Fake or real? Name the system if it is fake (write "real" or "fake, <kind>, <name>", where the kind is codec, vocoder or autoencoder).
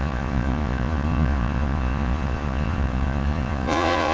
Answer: fake, vocoder, Vocos